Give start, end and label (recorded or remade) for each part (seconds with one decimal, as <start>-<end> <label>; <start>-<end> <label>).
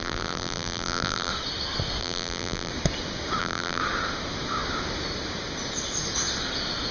0.0-1.3 remade; 1.3-2.0 recorded; 2.0-2.7 remade; 2.7-3.4 recorded; 3.4-3.8 remade; 3.8-6.9 recorded